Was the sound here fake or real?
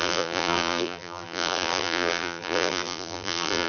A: fake